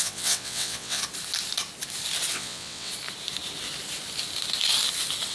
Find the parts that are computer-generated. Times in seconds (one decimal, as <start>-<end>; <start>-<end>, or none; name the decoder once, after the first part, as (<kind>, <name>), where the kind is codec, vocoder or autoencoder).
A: 0.0-1.0 (vocoder, WaveNeXt); 2.3-2.9